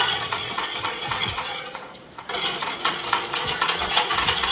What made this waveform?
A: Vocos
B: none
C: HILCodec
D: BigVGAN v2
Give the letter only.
A